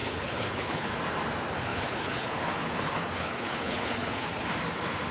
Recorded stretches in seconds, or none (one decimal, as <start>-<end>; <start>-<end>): 0.9-1.7; 4.4-5.1